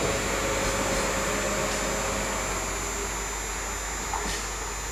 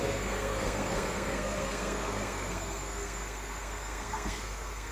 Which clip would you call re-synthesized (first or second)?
second